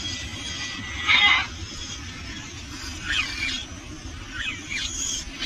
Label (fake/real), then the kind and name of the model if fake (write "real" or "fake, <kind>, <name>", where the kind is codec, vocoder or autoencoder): real